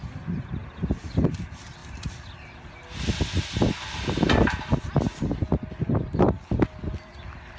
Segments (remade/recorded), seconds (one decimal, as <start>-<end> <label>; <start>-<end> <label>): 0.0-7.6 recorded